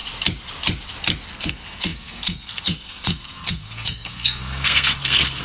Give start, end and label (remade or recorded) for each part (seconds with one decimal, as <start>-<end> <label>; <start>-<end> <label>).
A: 0.0-1.3 recorded; 1.3-5.4 remade